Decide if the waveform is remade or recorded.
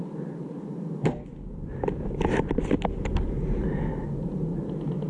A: recorded